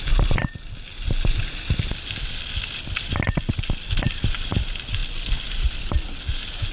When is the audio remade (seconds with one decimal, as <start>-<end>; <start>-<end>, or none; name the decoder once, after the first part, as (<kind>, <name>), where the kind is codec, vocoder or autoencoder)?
none